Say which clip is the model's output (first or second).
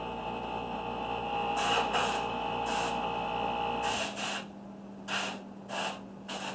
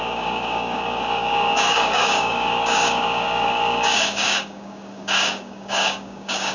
second